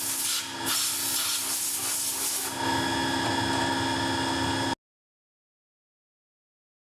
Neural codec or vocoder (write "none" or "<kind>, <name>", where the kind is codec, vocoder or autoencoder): none